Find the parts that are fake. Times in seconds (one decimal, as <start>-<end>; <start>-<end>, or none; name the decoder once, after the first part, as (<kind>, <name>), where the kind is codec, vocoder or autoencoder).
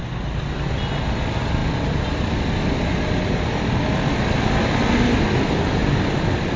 none